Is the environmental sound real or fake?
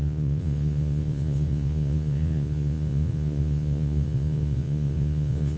fake